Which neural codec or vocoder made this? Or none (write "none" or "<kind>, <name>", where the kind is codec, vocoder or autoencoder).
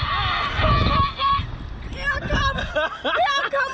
none